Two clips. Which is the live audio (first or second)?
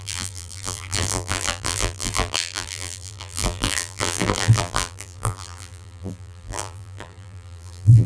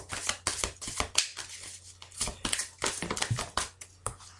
second